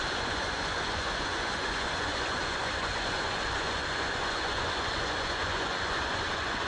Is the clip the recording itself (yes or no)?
no